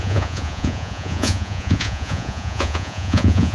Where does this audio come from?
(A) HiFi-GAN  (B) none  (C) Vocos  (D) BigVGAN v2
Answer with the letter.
C